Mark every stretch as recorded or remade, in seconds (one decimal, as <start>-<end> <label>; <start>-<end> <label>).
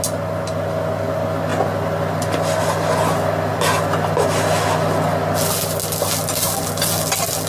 0.0-7.5 recorded